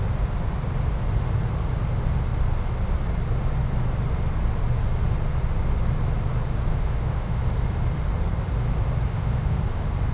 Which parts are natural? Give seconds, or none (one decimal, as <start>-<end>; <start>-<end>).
0.0-6.7; 7.4-9.1; 9.6-10.1